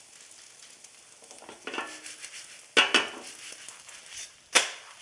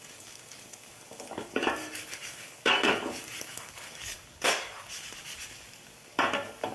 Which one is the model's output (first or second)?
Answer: second